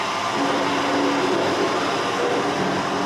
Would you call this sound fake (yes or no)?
no